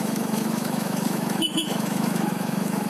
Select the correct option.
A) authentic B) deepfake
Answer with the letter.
B